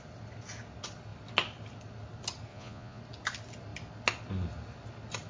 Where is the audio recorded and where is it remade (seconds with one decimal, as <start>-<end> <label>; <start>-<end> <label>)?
0.0-2.5 recorded; 2.5-3.0 remade; 3.0-5.3 recorded